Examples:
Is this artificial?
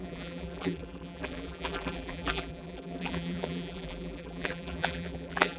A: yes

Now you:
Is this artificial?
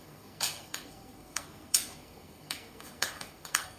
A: yes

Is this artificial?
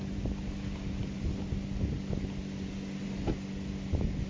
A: no